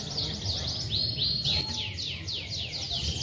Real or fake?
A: real